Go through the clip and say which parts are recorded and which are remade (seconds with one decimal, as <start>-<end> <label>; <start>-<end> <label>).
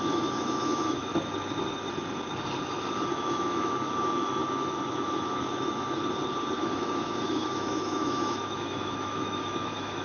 0.0-1.1 remade; 1.1-3.1 recorded; 3.1-6.0 remade; 6.0-6.6 recorded; 6.6-10.0 remade